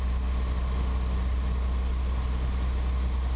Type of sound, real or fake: real